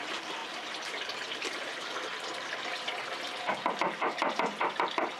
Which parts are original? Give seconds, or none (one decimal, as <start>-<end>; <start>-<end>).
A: none